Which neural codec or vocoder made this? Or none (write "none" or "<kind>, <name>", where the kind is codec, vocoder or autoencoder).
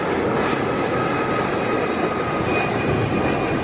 none